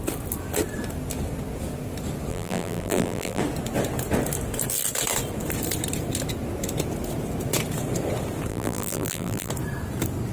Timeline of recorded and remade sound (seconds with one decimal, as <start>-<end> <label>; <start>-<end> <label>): 0.0-2.3 recorded; 2.3-3.4 remade; 3.4-8.5 recorded; 8.5-9.5 remade; 9.5-10.3 recorded